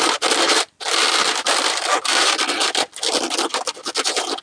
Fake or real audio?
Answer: fake